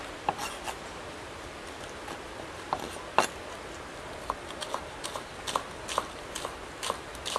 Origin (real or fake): real